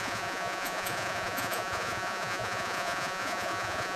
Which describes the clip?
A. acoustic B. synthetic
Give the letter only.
B